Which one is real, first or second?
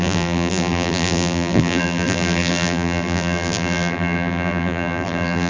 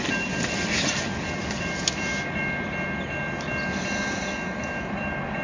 second